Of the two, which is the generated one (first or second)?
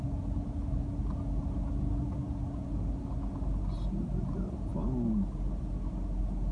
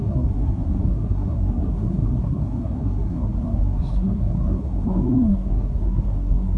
second